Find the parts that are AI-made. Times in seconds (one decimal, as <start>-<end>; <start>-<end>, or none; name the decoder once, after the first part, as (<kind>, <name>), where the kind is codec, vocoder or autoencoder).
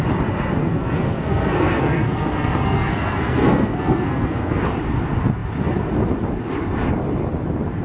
0.6-4.6 (codec, SNAC)